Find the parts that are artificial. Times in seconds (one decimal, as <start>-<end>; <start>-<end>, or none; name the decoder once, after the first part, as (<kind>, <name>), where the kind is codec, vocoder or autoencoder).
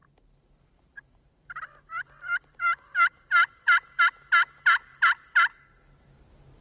0.0-4.0 (vocoder, BigVGAN v2)